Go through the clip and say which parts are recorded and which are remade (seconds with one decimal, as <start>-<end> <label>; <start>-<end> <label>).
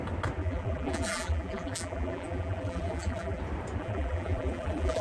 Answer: 0.0-0.4 recorded; 0.4-3.4 remade; 3.4-3.8 recorded; 3.8-5.0 remade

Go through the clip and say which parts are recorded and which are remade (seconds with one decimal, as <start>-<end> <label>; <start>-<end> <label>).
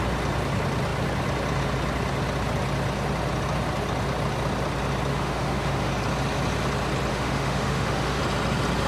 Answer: 0.0-5.1 recorded; 5.1-5.9 remade; 5.9-7.1 recorded; 7.1-8.2 remade; 8.2-8.9 recorded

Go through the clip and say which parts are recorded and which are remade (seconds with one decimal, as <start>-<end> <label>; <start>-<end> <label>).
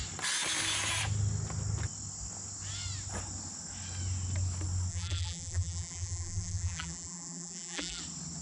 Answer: 0.0-4.9 recorded; 4.9-8.0 remade; 8.0-8.4 recorded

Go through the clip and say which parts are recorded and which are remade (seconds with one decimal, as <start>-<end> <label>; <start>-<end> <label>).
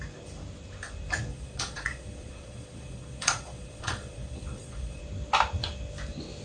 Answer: 0.0-1.3 recorded; 1.3-5.0 remade; 5.0-6.4 recorded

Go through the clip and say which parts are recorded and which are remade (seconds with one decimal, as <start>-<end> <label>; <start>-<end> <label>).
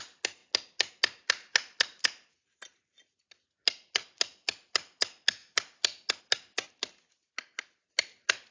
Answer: 0.0-8.5 recorded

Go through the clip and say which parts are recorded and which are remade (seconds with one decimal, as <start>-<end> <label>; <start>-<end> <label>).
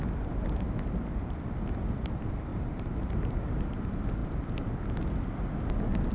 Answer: 0.0-2.5 recorded; 2.5-3.4 remade; 3.4-6.1 recorded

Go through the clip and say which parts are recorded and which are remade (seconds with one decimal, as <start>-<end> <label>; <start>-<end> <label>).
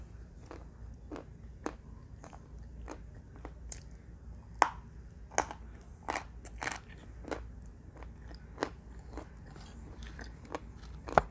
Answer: 0.0-11.3 recorded